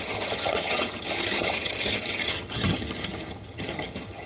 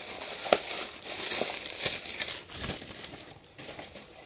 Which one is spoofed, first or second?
first